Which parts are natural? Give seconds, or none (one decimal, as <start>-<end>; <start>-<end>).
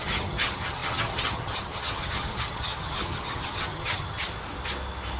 4.3-5.2